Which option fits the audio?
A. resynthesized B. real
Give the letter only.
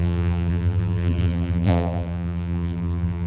A